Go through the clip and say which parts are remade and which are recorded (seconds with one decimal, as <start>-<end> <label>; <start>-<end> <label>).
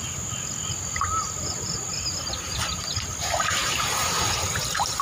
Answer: 0.0-5.0 recorded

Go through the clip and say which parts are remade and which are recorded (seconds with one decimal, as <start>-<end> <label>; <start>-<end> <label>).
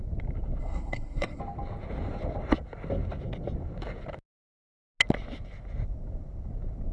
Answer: 0.0-0.6 recorded; 0.6-1.4 remade; 1.4-6.9 recorded